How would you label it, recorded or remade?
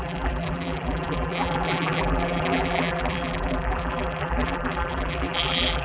remade